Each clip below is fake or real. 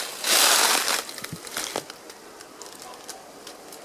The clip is real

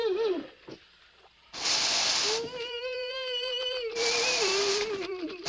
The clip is fake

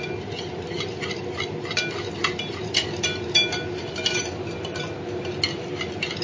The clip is real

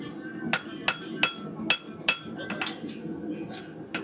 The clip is real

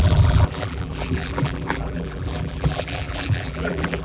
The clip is fake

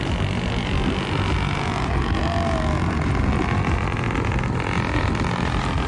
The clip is real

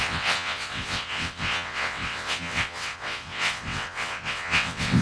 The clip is fake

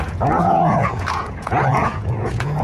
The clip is fake